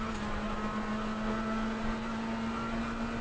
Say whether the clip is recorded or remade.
recorded